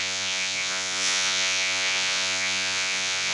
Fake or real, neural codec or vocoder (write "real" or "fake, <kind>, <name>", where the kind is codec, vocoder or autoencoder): fake, vocoder, Vocos